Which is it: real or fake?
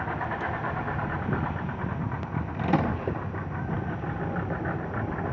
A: real